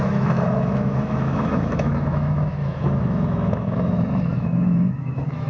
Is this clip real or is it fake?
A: fake